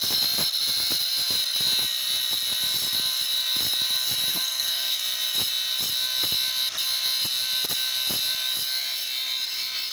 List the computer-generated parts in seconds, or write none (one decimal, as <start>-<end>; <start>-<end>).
4.3-5.0